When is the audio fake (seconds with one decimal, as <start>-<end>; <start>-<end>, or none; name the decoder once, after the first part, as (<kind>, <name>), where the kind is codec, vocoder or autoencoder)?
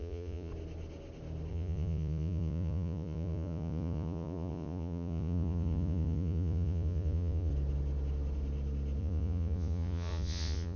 0.0-0.5 (vocoder, Vocos); 1.5-7.5; 9.0-10.8